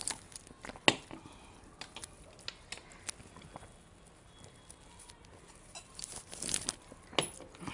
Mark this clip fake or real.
real